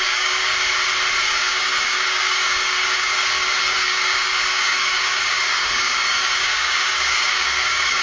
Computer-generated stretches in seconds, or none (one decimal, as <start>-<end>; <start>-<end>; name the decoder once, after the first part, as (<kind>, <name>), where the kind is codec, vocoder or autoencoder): 0.0-0.4 (codec, DAC); 1.2-8.0